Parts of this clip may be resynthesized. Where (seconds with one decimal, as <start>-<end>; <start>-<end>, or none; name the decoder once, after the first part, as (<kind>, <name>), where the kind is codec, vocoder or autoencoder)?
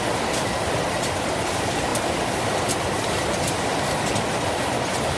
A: none